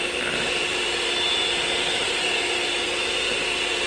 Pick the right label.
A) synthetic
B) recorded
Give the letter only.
B